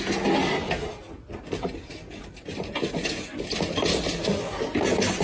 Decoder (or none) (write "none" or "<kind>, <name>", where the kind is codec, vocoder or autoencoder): none